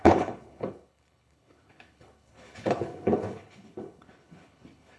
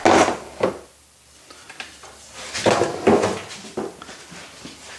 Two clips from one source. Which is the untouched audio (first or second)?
second